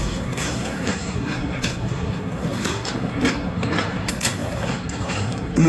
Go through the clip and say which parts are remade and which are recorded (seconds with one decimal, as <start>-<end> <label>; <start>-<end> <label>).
0.0-5.7 remade